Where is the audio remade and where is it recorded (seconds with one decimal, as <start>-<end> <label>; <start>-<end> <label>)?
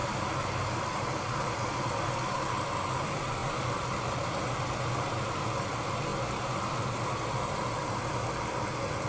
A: 0.0-1.1 remade; 1.1-1.7 recorded; 1.7-2.3 remade; 2.3-6.1 recorded; 6.1-8.2 remade; 8.2-9.1 recorded